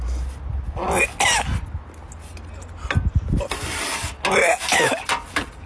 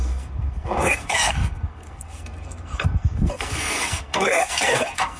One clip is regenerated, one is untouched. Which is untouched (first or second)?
first